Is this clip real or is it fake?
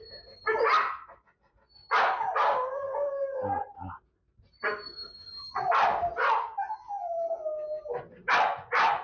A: real